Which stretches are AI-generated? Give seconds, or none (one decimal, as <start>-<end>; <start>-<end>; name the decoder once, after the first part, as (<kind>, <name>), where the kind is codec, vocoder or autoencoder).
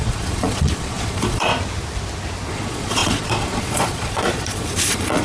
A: 0.0-1.5 (vocoder, Vocos); 2.5-5.2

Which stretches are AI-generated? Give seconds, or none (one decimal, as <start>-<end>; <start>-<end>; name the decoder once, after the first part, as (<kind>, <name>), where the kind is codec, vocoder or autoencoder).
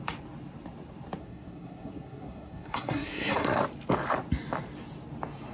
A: 1.2-3.6 (codec, SNAC)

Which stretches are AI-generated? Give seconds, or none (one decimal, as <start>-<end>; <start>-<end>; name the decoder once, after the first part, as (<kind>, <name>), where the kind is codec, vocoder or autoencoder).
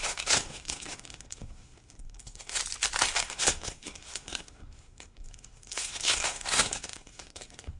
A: 0.0-2.6 (codec, SNAC); 3.2-7.8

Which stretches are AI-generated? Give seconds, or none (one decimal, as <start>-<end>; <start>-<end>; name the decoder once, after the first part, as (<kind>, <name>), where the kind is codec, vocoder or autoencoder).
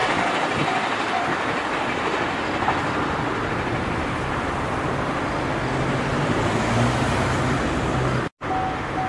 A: none